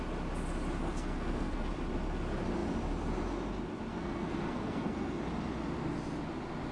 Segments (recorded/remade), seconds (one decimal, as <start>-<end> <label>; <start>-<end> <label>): 0.0-0.8 recorded; 0.8-1.7 remade; 1.7-3.9 recorded; 3.9-5.2 remade; 5.2-6.7 recorded